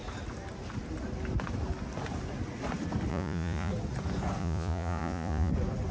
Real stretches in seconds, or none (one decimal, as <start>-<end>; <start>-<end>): 0.0-3.1; 3.7-4.4; 5.5-5.9